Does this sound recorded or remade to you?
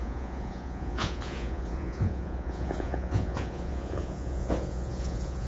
remade